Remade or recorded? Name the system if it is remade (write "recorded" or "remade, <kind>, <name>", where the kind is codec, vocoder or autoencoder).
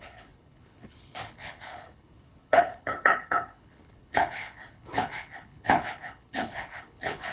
remade, codec, HILCodec